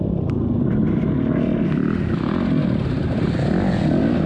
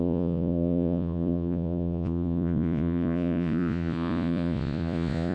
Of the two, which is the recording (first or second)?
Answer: first